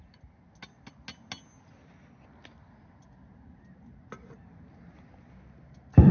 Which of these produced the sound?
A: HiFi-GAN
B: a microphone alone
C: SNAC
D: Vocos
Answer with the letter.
B